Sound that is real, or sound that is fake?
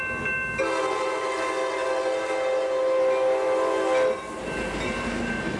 real